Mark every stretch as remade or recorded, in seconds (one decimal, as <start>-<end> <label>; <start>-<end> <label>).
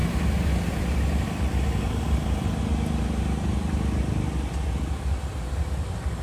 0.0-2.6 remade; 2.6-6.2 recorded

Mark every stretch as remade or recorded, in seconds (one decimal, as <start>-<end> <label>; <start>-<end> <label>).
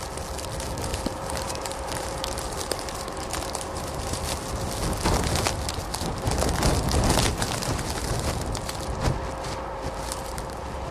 0.0-0.9 recorded; 0.9-4.2 remade; 4.2-5.9 recorded; 5.9-6.5 remade; 6.5-10.9 recorded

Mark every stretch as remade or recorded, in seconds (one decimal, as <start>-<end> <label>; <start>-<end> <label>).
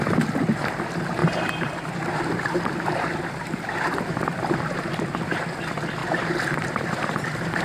0.0-1.2 recorded; 1.2-4.8 remade; 4.8-6.0 recorded; 6.0-7.6 remade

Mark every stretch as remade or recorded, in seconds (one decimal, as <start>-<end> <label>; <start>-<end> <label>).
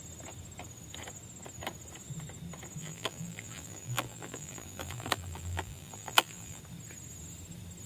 0.0-2.8 recorded; 2.8-6.6 remade; 6.6-7.9 recorded